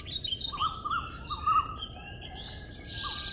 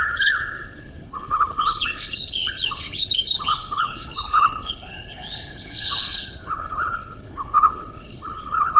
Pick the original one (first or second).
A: first